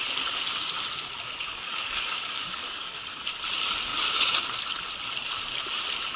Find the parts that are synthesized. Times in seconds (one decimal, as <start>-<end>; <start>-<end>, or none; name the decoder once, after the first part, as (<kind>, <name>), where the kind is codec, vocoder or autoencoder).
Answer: 1.5-3.2 (codec, DAC)